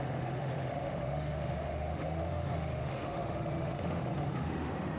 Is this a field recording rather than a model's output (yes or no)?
no